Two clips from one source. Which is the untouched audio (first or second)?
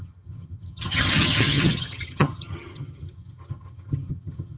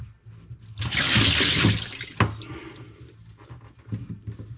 second